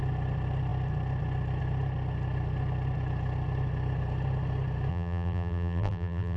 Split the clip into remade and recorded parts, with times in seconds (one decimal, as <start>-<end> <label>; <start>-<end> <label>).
0.0-4.9 recorded; 4.9-6.4 remade